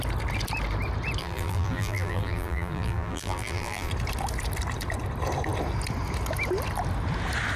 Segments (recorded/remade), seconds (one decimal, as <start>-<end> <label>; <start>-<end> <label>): 0.0-1.2 recorded; 1.2-3.9 remade; 3.9-7.6 recorded